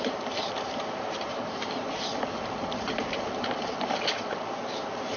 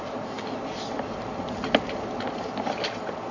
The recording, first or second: second